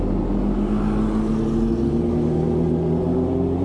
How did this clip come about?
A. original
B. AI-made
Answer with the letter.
A